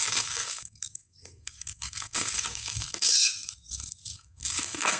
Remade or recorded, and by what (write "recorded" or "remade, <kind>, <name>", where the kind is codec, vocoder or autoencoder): remade, codec, SNAC